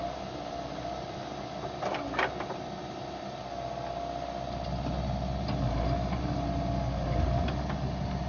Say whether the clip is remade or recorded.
recorded